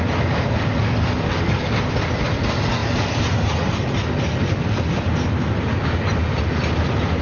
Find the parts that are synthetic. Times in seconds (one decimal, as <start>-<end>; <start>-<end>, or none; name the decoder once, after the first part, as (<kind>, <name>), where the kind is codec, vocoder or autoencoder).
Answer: none